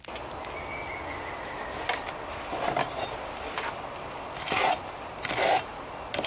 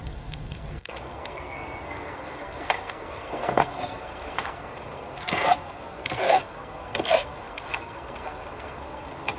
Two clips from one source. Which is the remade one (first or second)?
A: second